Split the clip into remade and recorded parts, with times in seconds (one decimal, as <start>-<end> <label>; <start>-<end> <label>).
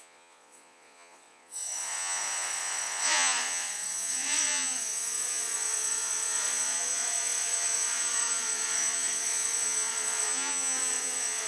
0.0-11.5 remade